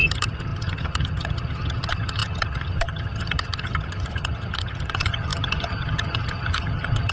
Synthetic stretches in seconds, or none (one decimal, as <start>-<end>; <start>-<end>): 0.0-7.1